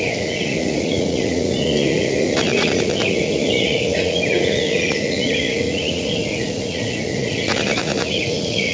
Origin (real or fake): fake